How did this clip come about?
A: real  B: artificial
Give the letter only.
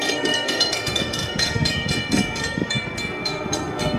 B